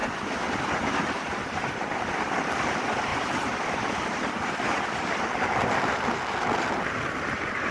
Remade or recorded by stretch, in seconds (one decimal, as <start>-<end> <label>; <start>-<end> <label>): 0.0-7.7 recorded